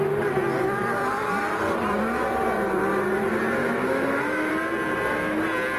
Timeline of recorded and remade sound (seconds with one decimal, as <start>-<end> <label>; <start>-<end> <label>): 0.0-3.6 recorded; 3.6-4.5 remade; 4.5-5.8 recorded